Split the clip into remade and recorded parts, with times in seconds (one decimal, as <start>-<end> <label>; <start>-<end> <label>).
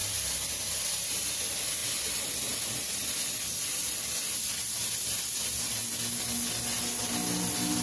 0.0-7.8 recorded